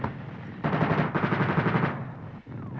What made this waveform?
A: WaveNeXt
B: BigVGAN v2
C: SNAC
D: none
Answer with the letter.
D